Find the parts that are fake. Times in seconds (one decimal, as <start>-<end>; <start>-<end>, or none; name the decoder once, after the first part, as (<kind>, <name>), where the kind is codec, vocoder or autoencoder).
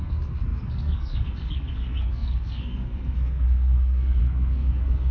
0.0-5.1 (codec, SNAC)